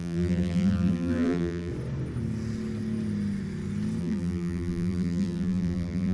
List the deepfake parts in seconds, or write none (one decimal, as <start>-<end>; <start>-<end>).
0.0-1.7; 4.0-6.1